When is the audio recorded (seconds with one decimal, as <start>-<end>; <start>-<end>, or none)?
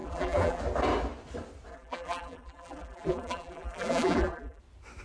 0.6-1.7; 4.6-5.0